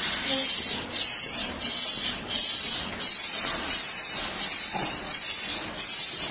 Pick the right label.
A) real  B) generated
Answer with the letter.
A